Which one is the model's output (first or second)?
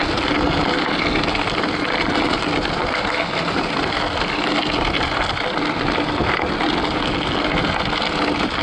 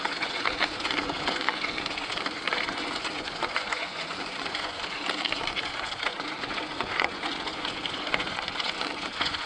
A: second